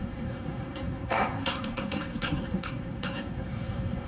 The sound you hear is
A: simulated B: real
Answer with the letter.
A